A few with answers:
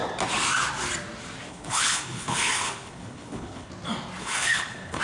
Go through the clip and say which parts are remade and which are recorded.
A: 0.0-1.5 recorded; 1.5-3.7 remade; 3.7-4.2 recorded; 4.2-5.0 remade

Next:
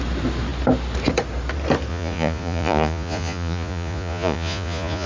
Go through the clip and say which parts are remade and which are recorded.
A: 0.0-1.9 recorded; 1.9-5.1 remade

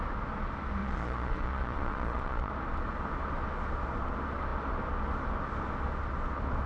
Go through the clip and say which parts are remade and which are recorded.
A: 0.0-0.8 recorded; 0.8-2.5 remade; 2.5-6.7 recorded